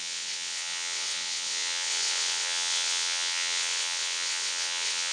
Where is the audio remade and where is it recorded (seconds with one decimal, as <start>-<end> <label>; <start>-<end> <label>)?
0.0-5.1 remade